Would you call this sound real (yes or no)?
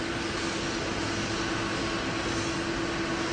yes